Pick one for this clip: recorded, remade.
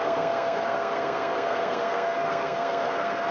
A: remade